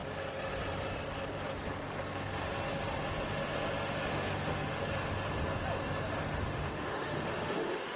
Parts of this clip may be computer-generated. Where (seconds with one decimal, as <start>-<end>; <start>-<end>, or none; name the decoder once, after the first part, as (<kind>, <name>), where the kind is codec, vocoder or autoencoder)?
4.1-4.8 (autoencoder, DAC-VAE); 6.2-8.0